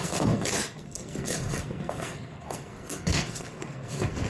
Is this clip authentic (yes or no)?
no